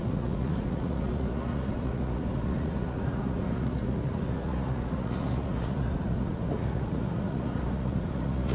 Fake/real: fake